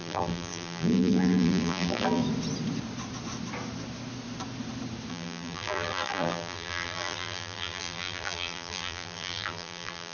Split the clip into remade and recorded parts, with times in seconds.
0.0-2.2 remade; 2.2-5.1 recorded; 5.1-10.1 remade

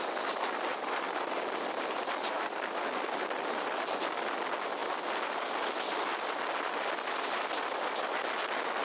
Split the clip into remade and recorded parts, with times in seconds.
0.0-8.8 recorded

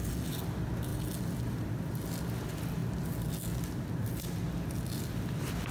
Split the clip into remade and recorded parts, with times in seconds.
0.0-5.7 recorded

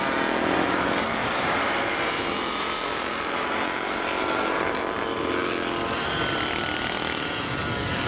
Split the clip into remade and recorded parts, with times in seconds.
0.0-1.2 recorded; 1.2-4.8 remade; 4.8-8.1 recorded